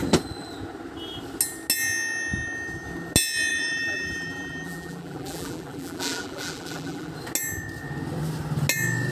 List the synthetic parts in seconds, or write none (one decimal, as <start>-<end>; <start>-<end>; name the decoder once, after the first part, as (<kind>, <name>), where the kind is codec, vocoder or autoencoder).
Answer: 3.5-7.1 (vocoder, BigVGAN v2)